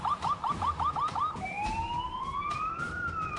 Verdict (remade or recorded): remade